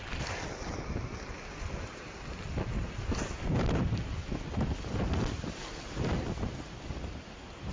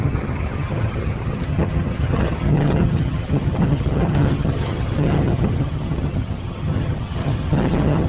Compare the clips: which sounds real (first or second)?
first